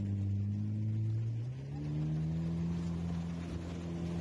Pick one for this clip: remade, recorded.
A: recorded